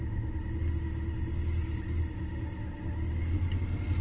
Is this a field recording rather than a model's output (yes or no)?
yes